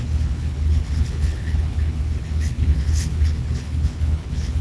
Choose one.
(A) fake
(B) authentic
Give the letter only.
A